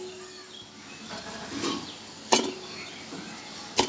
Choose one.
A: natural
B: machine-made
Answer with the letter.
A